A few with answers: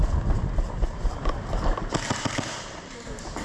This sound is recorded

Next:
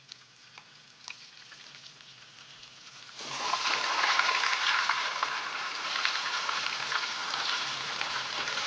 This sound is recorded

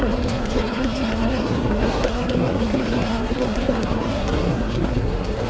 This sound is remade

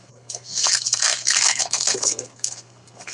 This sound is remade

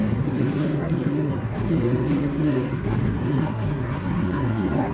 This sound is remade